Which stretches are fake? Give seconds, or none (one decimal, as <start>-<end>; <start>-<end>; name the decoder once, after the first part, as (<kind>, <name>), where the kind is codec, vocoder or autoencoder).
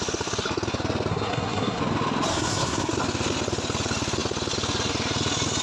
1.1-1.8 (codec, SNAC); 2.3-2.9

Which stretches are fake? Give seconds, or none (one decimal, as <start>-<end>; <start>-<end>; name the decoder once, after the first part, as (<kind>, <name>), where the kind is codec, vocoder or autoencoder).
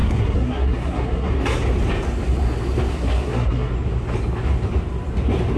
0.0-1.3 (codec, SNAC); 2.9-3.7